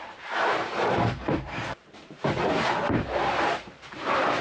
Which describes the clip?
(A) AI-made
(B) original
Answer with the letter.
A